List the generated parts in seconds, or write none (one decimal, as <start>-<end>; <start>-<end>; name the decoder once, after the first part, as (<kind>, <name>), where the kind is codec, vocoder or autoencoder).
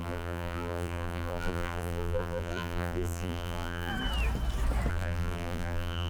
0.0-3.9 (vocoder, BigVGAN v2); 4.9-6.1